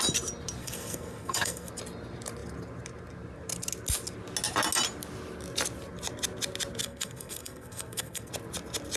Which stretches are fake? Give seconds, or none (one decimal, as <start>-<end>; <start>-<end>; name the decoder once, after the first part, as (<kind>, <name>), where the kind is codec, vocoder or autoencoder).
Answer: 0.6-1.7 (codec, SNAC); 6.8-8.3

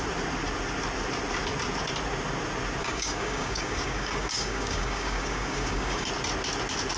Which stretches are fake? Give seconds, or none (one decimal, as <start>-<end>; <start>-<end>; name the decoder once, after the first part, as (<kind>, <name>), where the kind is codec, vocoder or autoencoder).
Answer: 2.8-6.1 (codec, DAC)

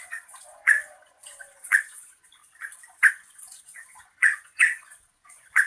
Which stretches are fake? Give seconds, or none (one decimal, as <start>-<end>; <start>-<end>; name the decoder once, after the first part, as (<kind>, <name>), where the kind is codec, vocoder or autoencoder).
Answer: 0.0-2.4 (vocoder, Vocos); 3.1-5.7

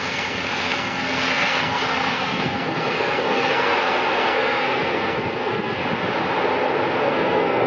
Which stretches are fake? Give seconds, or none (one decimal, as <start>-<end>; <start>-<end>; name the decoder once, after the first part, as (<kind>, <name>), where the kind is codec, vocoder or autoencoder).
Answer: 0.0-5.8 (codec, SNAC); 7.0-7.7

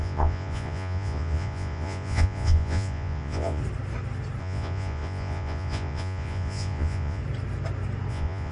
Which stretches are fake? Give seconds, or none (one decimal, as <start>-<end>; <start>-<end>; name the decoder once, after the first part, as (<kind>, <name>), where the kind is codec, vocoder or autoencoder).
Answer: 0.0-3.6 (vocoder, Vocos); 4.4-7.2; 8.1-8.5

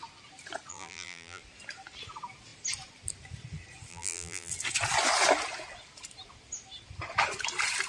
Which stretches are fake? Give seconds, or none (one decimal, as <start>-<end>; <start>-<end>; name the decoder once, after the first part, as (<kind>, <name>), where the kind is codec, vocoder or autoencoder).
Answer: 0.7-1.4 (vocoder, BigVGAN v2); 3.9-4.5